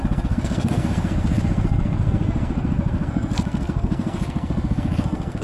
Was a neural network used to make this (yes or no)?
yes